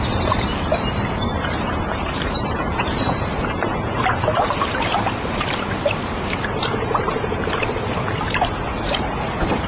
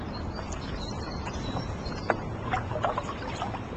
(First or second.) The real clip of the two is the second